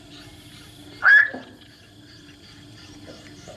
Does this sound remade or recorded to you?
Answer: recorded